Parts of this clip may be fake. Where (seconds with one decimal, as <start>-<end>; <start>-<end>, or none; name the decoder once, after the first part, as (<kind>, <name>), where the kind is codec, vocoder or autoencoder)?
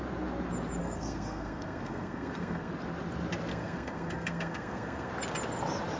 0.8-2.7 (codec, SNAC); 3.5-5.1